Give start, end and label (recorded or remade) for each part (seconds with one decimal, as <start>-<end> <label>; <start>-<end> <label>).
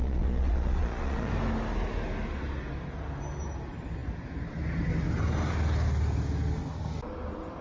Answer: 0.0-1.3 remade; 1.3-7.6 recorded